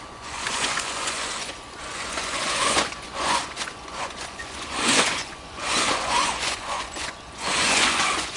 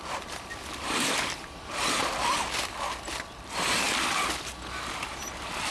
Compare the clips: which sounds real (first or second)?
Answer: second